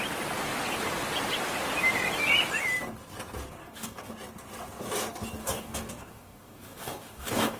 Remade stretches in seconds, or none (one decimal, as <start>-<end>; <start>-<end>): 3.6-4.1; 5.4-7.6

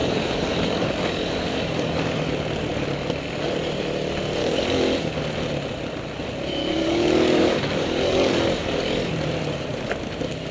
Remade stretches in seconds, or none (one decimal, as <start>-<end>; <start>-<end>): 0.0-2.3; 4.4-5.2; 6.6-9.1

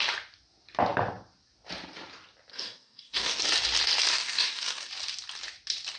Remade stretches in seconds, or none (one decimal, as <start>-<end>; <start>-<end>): 2.5-3.4; 4.1-4.9

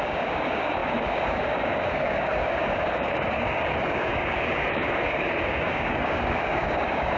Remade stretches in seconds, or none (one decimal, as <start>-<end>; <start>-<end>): 0.0-7.2

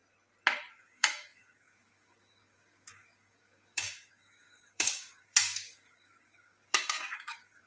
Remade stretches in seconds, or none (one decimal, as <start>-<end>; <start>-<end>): 0.7-7.7

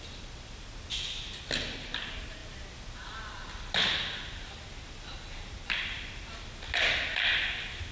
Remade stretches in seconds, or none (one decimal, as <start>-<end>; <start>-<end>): none

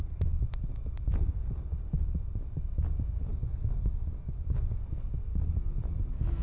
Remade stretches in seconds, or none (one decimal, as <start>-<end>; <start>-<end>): 3.3-4.8